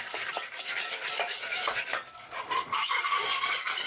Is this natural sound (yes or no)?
no